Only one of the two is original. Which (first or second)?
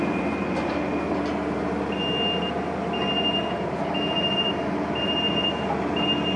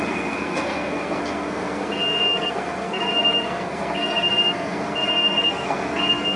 first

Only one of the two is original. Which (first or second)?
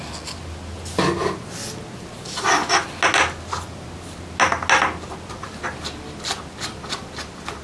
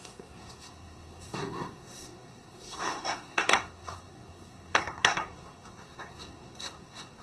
first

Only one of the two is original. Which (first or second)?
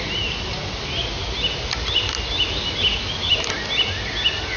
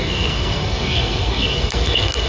first